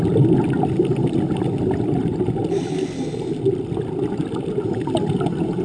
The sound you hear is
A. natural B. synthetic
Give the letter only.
A